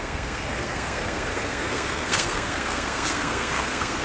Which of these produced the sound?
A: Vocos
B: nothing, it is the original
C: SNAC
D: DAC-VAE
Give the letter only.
C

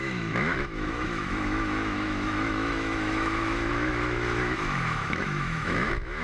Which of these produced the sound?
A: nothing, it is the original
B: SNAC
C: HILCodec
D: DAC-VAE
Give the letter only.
D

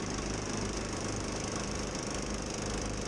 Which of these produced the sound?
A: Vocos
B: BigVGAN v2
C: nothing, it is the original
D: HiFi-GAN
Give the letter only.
B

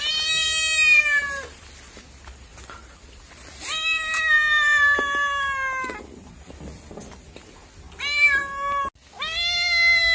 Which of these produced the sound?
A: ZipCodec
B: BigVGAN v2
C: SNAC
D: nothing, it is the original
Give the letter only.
D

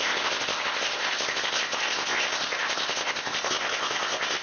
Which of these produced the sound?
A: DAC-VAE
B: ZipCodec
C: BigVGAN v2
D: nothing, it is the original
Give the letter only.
B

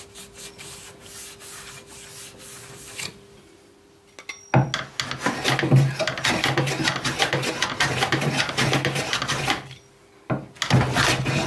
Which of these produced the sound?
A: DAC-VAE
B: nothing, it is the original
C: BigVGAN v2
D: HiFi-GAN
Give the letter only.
B